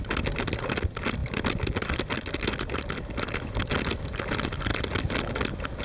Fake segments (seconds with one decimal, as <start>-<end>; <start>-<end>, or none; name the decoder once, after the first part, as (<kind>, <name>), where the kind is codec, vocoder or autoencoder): none